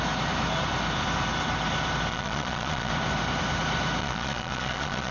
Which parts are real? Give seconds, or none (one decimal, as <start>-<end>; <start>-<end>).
0.0-2.1; 2.9-4.0